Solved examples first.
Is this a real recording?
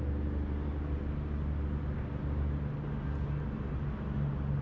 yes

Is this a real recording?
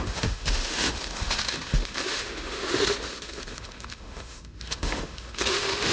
no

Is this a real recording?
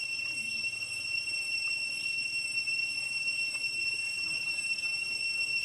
no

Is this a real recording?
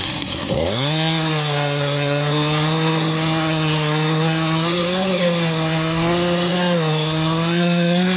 no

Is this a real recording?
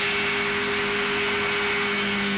yes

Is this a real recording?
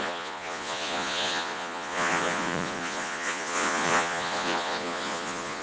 no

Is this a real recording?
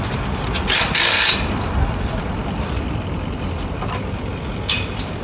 yes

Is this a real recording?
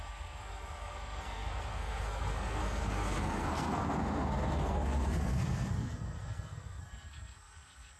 no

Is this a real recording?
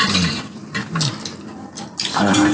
yes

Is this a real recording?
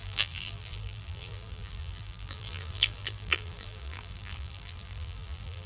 no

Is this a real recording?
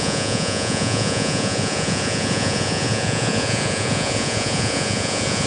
no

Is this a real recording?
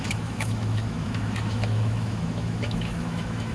no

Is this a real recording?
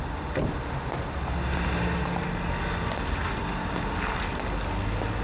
yes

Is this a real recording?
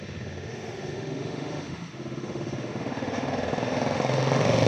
no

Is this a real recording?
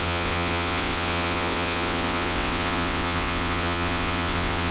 no